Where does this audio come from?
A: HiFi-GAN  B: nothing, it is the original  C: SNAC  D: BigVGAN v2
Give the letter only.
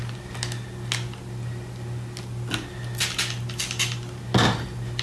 B